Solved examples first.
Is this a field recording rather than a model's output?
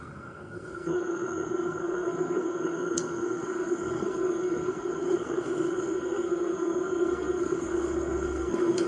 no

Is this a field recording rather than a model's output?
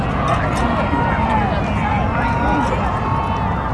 yes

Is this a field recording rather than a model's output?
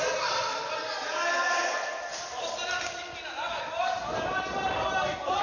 yes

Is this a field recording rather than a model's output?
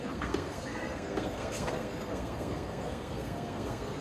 no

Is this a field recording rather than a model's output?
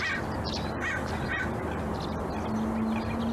yes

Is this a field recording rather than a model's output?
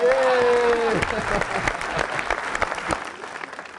yes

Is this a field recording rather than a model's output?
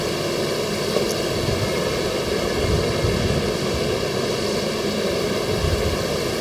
yes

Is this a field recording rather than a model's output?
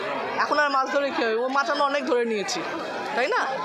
yes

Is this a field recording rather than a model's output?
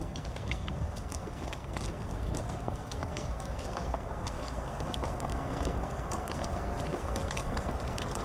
no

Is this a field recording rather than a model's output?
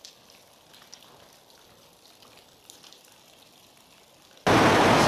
yes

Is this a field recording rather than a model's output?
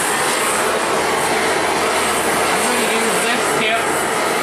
yes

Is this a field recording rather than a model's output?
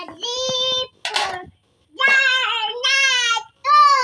yes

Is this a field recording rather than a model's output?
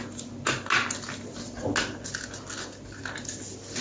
yes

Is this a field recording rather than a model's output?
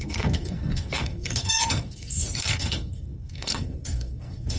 no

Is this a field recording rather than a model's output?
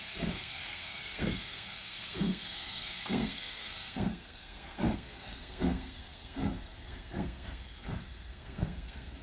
no